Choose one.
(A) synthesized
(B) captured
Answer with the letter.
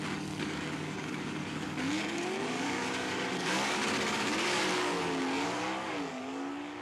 A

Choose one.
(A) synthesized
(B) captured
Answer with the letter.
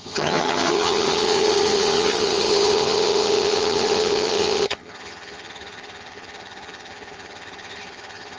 A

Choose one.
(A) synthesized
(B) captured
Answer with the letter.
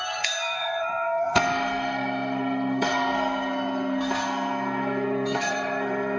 A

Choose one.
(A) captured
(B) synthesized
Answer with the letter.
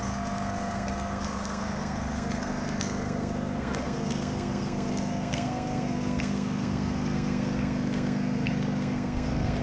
B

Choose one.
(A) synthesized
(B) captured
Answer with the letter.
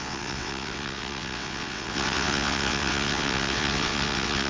A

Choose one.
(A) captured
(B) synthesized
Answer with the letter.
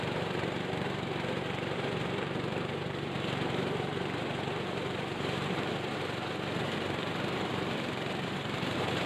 B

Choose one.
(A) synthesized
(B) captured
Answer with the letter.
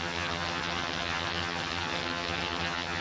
A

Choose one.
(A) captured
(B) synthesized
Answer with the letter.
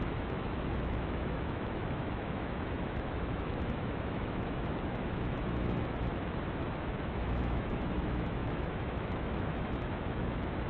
B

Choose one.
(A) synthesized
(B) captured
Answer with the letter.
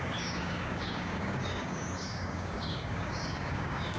A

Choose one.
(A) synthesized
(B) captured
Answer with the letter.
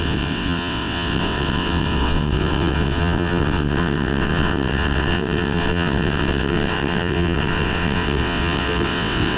A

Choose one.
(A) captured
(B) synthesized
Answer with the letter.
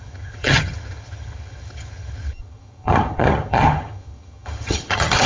B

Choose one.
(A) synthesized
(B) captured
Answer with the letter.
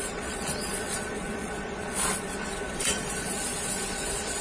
A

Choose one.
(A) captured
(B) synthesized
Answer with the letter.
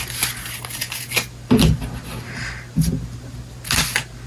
A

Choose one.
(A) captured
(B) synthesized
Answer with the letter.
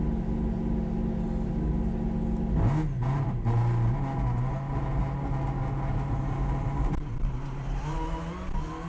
A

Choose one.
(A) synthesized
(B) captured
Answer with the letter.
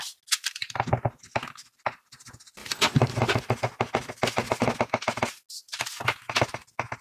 B